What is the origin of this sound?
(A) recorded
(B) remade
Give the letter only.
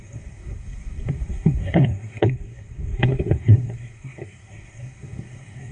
B